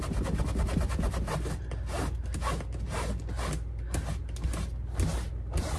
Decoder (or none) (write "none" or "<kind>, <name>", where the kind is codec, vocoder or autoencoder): none